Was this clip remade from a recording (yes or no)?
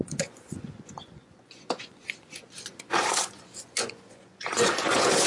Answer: yes